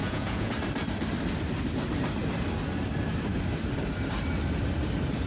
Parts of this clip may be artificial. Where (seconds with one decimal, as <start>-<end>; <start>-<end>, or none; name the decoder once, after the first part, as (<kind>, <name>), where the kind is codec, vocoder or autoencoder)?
0.0-0.5 (vocoder, Vocos)